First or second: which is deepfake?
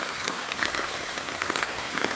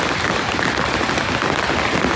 first